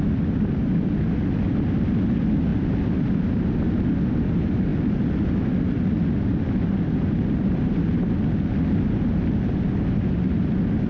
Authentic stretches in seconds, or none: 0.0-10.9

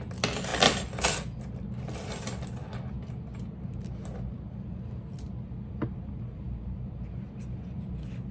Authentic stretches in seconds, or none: 0.0-8.3

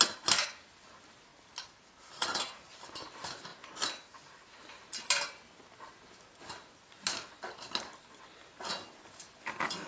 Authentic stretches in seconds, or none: 0.0-9.9

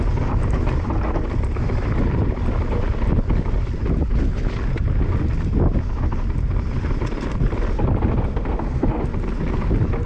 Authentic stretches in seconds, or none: 0.0-8.3; 8.9-10.1

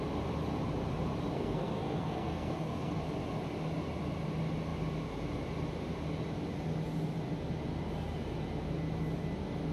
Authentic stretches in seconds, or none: 0.0-1.3; 3.0-9.7

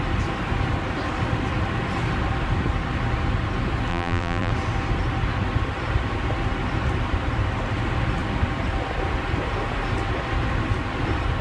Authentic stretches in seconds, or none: 0.0-3.9; 4.5-11.4

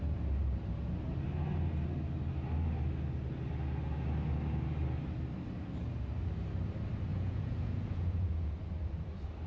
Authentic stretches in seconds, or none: 0.0-7.1; 8.5-9.5

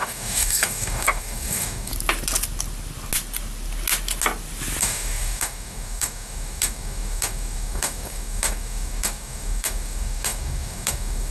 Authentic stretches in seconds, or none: 1.9-4.8